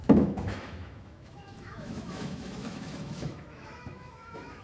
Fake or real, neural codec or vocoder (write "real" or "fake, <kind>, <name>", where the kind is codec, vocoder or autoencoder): fake, autoencoder, DAC-VAE